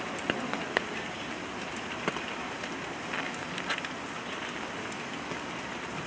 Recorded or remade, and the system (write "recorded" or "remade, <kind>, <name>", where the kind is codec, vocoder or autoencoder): recorded